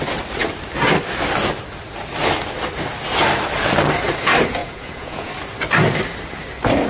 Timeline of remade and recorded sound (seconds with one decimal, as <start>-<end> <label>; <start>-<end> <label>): 0.0-4.6 recorded; 4.6-5.3 remade; 5.3-6.9 recorded